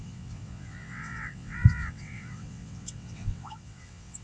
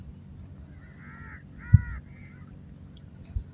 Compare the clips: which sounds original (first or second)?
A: second